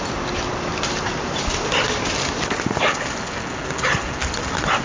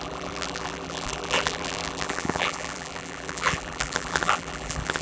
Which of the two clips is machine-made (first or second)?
second